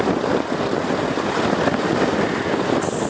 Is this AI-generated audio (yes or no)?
no